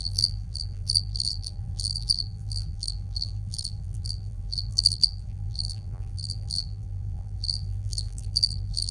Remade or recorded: remade